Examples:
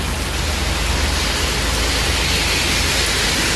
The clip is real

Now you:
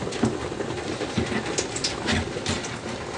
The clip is real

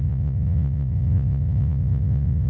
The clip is fake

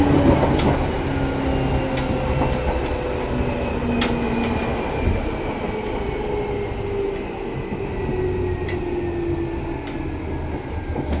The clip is real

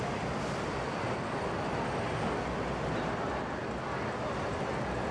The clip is real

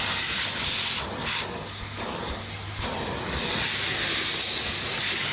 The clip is real